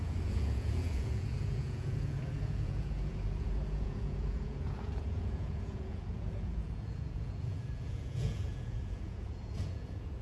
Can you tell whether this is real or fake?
fake